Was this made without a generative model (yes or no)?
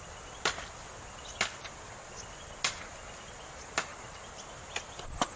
yes